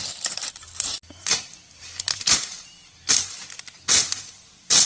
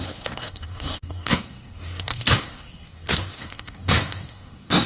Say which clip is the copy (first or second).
second